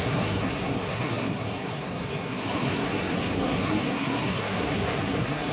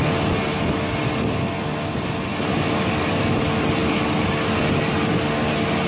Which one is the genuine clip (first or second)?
second